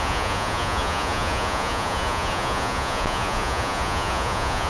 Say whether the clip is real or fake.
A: fake